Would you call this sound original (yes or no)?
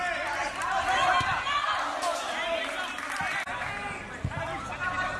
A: yes